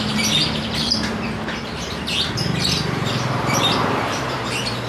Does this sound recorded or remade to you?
remade